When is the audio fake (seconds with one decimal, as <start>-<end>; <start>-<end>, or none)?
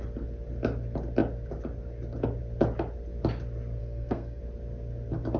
3.8-4.4